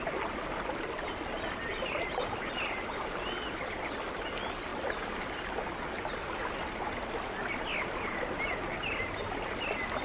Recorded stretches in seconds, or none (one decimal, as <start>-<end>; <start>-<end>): 0.0-10.0